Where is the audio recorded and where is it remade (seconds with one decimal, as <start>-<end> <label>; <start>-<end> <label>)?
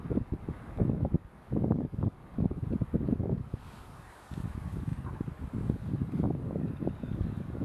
0.0-7.6 remade